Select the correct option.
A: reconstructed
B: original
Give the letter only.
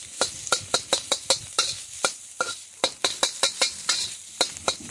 A